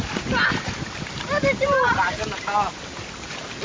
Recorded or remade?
recorded